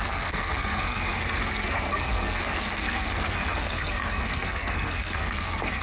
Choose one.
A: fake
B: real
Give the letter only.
A